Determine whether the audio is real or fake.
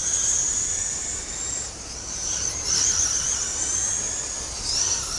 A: fake